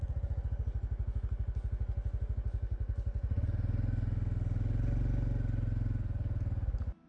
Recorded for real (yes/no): yes